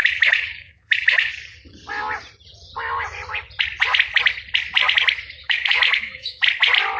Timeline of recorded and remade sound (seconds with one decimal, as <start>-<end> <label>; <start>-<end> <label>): 0.0-1.3 remade; 1.3-5.4 recorded; 5.4-6.4 remade; 6.4-7.0 recorded